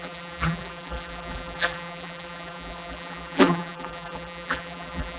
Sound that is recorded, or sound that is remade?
remade